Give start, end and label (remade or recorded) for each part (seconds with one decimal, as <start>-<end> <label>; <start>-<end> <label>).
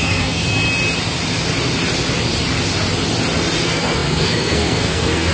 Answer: 0.0-0.4 remade; 0.4-3.6 recorded; 3.6-5.3 remade